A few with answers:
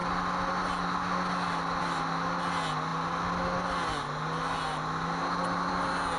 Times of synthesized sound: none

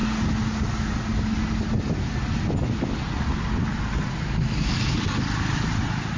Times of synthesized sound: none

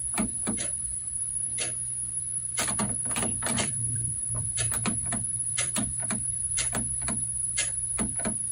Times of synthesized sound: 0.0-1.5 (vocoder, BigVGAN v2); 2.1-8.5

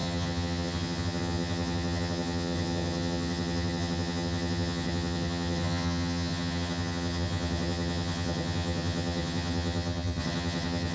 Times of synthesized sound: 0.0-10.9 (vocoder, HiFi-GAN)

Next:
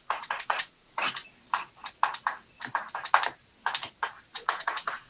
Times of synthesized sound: 0.0-1.2 (vocoder, Vocos); 4.3-5.1

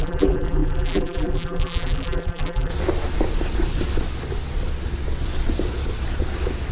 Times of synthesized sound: 0.0-2.7 (vocoder, BigVGAN v2)

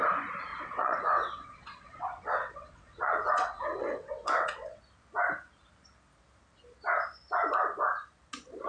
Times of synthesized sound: 0.5-4.8 (vocoder, WaveNeXt)

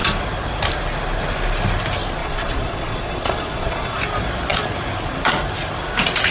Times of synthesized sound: 2.2-4.0 (vocoder, Vocos)